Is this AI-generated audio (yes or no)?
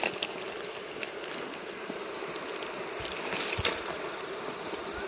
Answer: no